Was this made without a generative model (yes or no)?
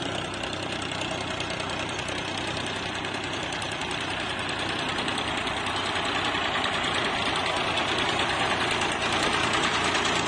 yes